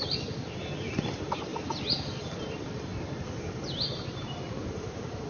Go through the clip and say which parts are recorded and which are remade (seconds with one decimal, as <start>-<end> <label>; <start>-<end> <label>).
0.0-5.3 recorded